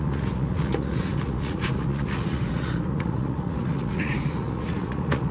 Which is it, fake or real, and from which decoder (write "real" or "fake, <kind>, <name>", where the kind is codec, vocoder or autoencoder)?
fake, vocoder, Vocos